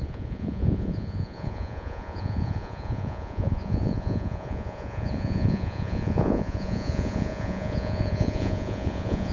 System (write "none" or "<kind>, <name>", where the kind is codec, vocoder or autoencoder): vocoder, Vocos